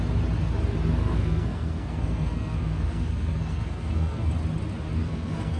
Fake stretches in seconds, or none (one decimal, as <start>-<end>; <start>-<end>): 1.0-4.3; 5.0-5.6